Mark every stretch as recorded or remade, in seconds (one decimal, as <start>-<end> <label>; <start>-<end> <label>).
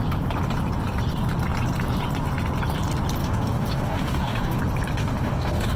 0.0-3.2 recorded; 3.2-4.6 remade; 4.6-5.0 recorded; 5.0-5.8 remade